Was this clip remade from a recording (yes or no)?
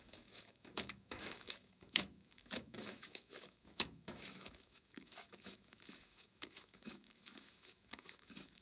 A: yes